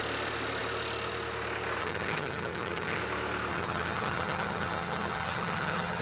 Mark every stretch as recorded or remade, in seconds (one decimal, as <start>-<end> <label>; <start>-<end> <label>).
0.0-1.8 recorded; 1.8-3.0 remade; 3.0-3.5 recorded; 3.5-6.0 remade